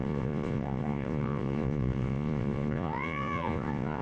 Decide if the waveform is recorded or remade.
remade